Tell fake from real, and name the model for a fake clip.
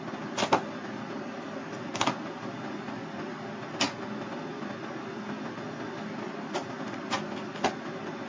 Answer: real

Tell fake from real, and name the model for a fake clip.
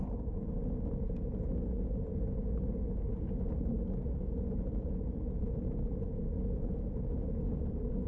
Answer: fake, vocoder, Vocos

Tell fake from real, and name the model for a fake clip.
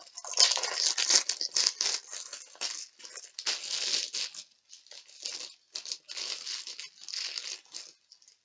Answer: real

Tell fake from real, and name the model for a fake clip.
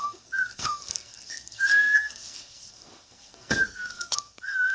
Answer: fake, codec, SNAC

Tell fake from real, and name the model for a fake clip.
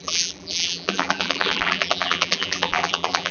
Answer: fake, vocoder, BigVGAN v2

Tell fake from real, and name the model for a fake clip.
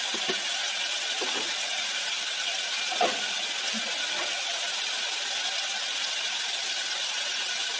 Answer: real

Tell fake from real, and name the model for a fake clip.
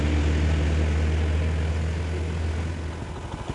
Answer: real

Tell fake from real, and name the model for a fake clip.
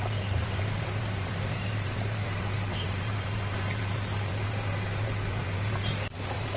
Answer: fake, vocoder, BigVGAN v2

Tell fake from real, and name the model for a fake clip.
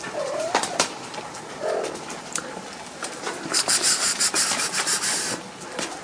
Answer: fake, vocoder, BigVGAN v2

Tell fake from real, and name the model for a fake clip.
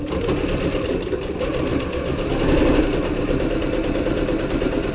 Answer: real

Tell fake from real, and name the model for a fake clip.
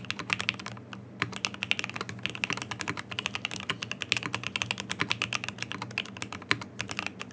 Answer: real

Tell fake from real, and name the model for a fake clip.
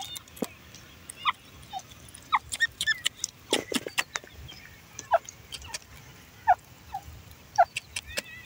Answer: real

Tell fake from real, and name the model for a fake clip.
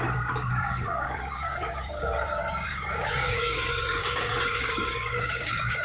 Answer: fake, codec, DAC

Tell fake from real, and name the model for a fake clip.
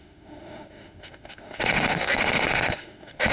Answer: fake, autoencoder, DAC-VAE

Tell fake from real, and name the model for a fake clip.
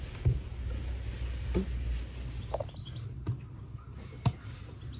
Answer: real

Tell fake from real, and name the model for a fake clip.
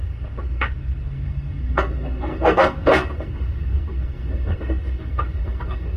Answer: fake, codec, SNAC